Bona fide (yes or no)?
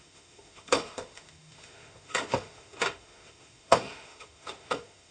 no